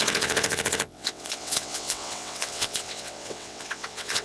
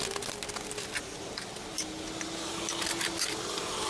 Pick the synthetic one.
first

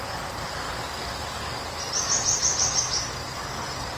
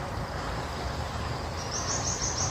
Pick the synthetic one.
second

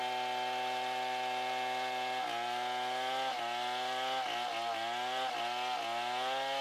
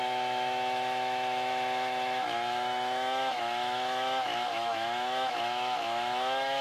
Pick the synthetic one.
second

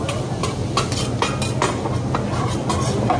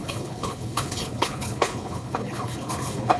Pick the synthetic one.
second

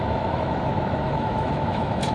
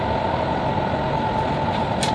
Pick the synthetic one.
first